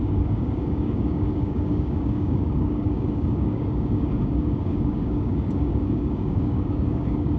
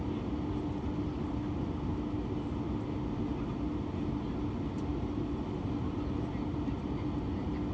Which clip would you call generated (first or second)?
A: first